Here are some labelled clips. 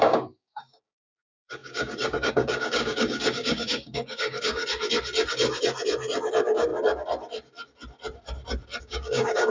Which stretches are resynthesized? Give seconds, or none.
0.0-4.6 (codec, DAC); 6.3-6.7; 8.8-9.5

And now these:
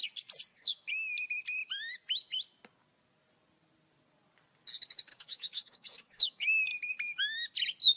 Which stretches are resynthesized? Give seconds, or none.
0.5-1.1 (codec, DAC); 5.1-6.7

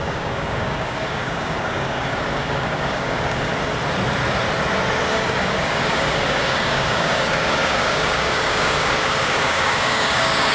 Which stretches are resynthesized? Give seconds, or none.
0.0-3.5 (codec, DAC); 5.1-10.5